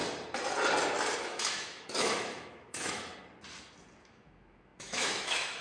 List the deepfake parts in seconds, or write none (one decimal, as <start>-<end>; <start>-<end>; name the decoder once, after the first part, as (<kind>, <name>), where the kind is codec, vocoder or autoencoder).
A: 1.2-3.1 (autoencoder, DAC-VAE); 4.0-5.6